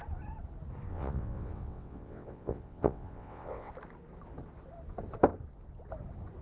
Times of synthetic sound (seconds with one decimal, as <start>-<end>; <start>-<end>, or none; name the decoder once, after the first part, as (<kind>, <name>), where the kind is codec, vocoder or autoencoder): 0.9-3.7 (vocoder, WaveNeXt)